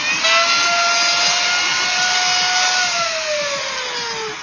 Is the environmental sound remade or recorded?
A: recorded